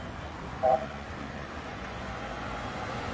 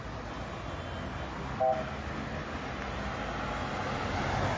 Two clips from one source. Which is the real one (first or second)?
second